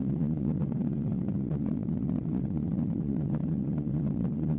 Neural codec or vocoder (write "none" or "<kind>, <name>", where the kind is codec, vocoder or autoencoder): vocoder, WaveNeXt